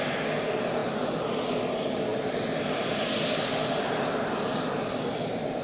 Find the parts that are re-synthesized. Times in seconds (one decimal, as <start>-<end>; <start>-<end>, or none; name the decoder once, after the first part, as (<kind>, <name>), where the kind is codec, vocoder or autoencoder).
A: none